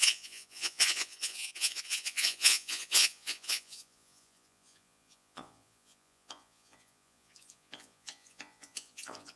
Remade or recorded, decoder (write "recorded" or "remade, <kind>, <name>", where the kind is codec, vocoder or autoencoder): remade, vocoder, Vocos